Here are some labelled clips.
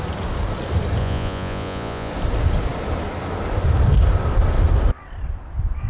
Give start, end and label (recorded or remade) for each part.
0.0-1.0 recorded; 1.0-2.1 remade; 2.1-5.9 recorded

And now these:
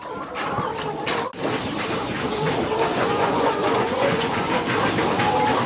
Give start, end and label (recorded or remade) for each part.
0.0-2.0 recorded; 2.0-2.5 remade; 2.5-2.9 recorded; 2.9-4.5 remade; 4.5-5.7 recorded

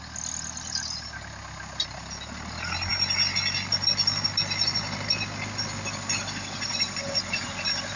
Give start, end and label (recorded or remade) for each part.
0.0-8.0 recorded